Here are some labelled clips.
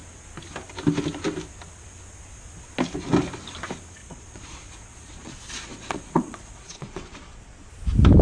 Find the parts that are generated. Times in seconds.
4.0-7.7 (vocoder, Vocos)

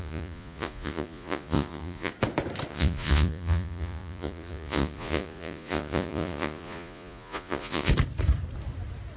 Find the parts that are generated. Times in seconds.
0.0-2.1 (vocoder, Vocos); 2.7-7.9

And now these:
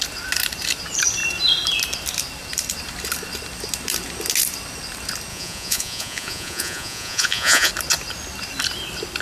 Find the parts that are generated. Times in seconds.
5.3-7.7 (vocoder, Vocos)